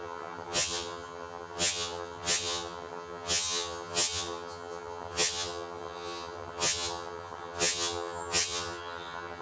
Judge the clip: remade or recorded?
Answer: remade